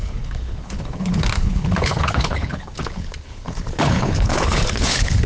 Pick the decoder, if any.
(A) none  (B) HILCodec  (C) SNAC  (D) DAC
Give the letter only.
B